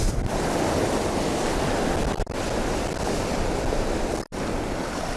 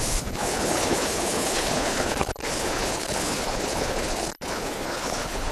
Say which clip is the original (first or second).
first